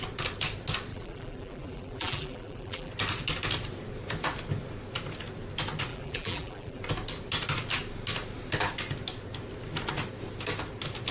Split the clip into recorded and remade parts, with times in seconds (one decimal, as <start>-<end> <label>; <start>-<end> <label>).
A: 0.0-0.9 recorded; 0.9-2.9 remade; 2.9-5.9 recorded; 5.9-6.8 remade; 6.8-11.1 recorded